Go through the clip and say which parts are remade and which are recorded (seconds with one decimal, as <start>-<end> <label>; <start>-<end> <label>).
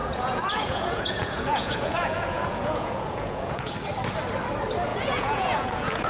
0.0-3.7 remade; 3.7-4.9 recorded; 4.9-6.1 remade